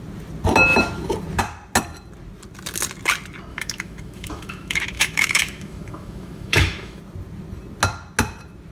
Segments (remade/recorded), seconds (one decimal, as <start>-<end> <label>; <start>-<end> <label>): 0.0-3.5 recorded; 3.5-7.0 remade; 7.0-8.7 recorded